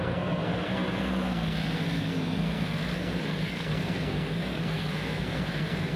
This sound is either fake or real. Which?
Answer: fake